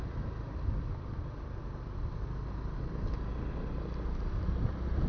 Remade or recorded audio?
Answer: recorded